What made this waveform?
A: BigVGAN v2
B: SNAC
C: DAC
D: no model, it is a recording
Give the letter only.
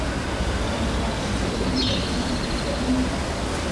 D